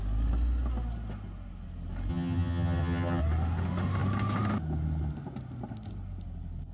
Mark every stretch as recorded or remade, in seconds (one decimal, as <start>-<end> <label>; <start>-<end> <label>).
0.0-2.1 recorded; 2.1-3.2 remade; 3.2-6.7 recorded